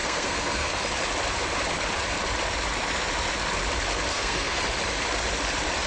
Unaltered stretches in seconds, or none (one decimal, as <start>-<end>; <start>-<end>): 0.7-4.1; 4.6-5.9